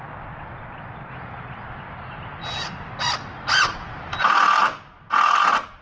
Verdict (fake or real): real